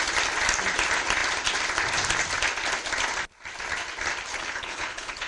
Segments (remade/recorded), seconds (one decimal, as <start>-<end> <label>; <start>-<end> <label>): 0.0-4.3 recorded; 4.3-5.3 remade